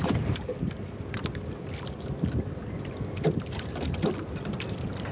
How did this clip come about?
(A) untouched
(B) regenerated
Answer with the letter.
A